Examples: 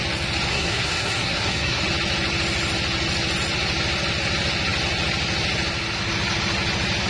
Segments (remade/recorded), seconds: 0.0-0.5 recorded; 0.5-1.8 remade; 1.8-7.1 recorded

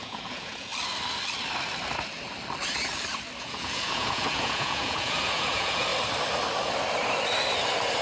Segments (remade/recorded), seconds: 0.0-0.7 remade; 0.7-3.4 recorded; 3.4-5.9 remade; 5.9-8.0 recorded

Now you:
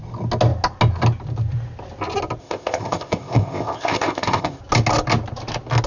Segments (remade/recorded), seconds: 0.0-2.4 recorded; 2.4-4.6 remade; 4.6-5.9 recorded

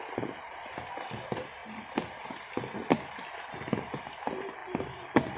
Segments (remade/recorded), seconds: 0.0-5.4 recorded

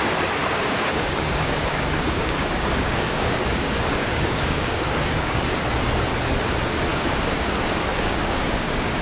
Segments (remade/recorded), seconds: 0.0-0.4 recorded; 0.4-5.4 remade; 5.4-6.9 recorded; 6.9-7.5 remade; 7.5-7.9 recorded; 7.9-9.0 remade

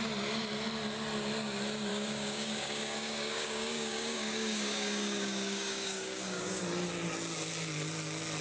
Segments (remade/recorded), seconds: 0.0-1.9 recorded; 1.9-6.6 remade; 6.6-8.4 recorded